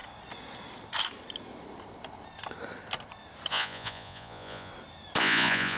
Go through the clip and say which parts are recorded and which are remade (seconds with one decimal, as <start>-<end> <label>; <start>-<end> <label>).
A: 0.0-3.5 recorded; 3.5-4.7 remade; 4.7-5.2 recorded; 5.2-5.8 remade

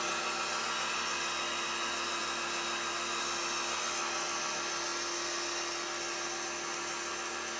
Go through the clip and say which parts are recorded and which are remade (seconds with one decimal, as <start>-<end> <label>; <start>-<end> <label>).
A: 0.0-7.6 recorded

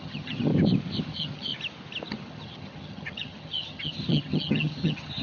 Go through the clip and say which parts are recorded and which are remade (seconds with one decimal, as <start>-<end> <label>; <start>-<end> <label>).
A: 0.0-0.5 remade; 0.5-1.0 recorded; 1.0-1.5 remade; 1.5-2.1 recorded; 2.1-5.2 remade

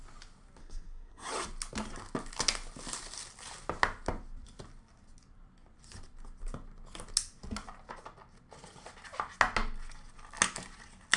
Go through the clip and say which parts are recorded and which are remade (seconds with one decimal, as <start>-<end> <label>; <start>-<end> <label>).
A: 0.0-0.6 recorded; 0.6-1.3 remade; 1.3-11.2 recorded

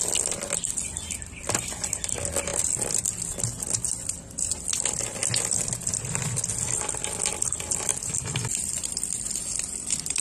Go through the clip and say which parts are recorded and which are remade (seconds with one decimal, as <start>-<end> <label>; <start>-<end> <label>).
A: 0.0-10.2 recorded

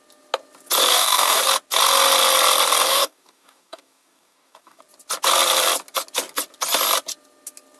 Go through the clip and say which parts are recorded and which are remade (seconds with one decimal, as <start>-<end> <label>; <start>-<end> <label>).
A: 0.0-0.9 recorded; 0.9-1.4 remade; 1.4-2.9 recorded; 2.9-4.8 remade; 4.8-7.8 recorded

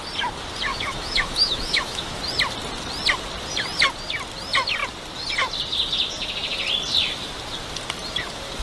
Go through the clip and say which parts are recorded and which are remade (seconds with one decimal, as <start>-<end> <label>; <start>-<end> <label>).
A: 0.0-0.7 recorded; 0.7-2.2 remade; 2.2-8.6 recorded